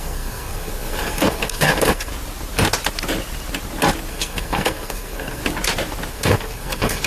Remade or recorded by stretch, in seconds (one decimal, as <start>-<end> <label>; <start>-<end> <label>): 0.0-2.1 remade; 2.1-4.1 recorded; 4.1-5.4 remade; 5.4-6.1 recorded; 6.1-7.1 remade